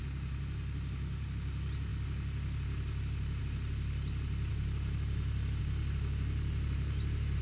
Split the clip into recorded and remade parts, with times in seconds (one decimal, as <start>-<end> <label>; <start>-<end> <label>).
0.0-7.4 recorded